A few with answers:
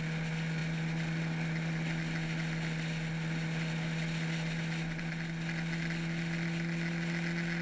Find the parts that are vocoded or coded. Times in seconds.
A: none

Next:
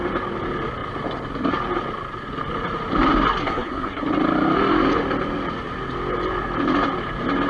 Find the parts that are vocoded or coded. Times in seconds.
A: 3.4-4.0

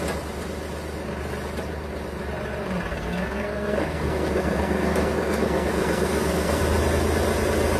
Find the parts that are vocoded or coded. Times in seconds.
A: 2.9-6.6

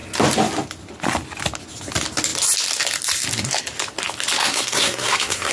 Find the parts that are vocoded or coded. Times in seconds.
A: 4.4-5.5

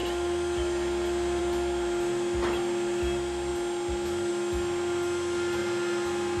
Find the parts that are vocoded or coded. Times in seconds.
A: none

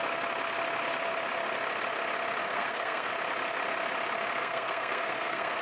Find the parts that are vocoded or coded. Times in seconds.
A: 2.4-3.1; 4.4-5.6

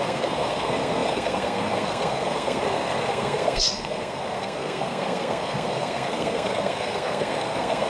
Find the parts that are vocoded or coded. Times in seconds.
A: 0.0-7.9

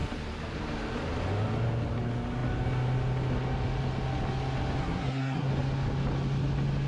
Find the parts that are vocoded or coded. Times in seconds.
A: 4.8-5.5